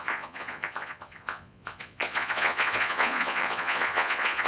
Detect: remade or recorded remade